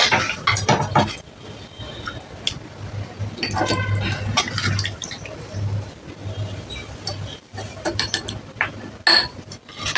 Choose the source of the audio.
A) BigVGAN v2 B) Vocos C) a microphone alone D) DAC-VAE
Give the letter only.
C